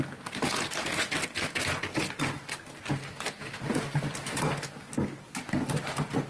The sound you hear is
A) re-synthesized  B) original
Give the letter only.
B